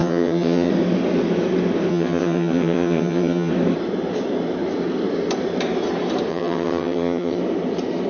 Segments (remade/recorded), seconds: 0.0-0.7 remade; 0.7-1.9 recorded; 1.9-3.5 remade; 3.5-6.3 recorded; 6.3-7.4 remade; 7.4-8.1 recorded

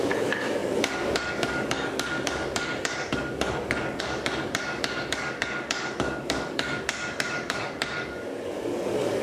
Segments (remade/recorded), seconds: 0.0-9.2 remade

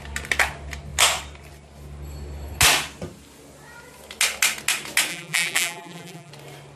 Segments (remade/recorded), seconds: 0.0-5.1 recorded; 5.1-6.3 remade; 6.3-6.8 recorded

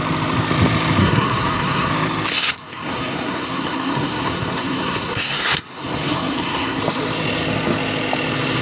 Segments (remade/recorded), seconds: 0.0-1.0 recorded; 1.0-1.9 remade; 1.9-2.3 recorded; 2.3-6.8 remade; 6.8-8.6 recorded

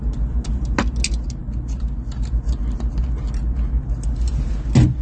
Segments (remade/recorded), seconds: 0.0-5.0 recorded

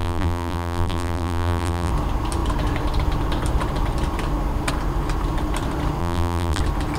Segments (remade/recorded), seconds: 0.0-1.9 remade; 1.9-6.0 recorded; 6.0-6.6 remade; 6.6-7.0 recorded

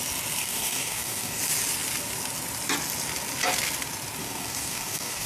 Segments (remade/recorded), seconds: 0.0-0.4 recorded; 0.4-1.4 remade; 1.4-4.2 recorded; 4.2-5.3 remade